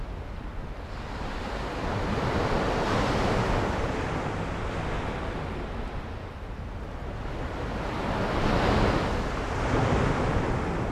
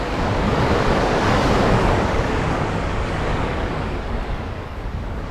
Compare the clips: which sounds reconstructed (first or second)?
second